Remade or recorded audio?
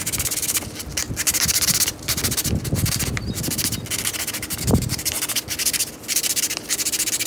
recorded